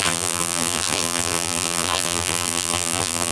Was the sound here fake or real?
fake